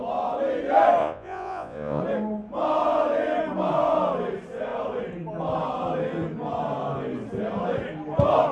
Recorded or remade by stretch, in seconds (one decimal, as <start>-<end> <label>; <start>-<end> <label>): 0.0-1.0 recorded; 1.0-2.0 remade; 2.0-8.5 recorded